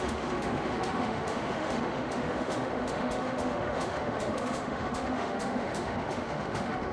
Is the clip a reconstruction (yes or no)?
yes